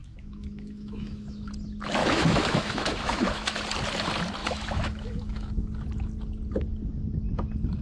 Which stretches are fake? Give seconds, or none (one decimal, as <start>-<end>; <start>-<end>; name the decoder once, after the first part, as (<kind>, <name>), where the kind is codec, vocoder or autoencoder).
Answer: 0.0-1.5 (autoencoder, DAC-VAE); 2.0-3.6; 4.4-5.5

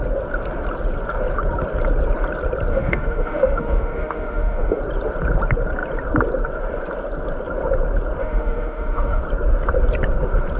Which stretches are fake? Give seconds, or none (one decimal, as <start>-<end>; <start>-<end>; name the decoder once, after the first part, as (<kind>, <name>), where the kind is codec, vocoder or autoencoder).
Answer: 2.7-4.8 (autoencoder, DAC-VAE); 8.2-9.2